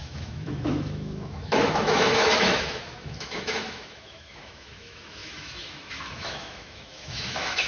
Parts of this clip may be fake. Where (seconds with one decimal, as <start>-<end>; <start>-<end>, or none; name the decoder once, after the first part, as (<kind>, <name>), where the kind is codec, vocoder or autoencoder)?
0.0-7.7 (autoencoder, DAC-VAE)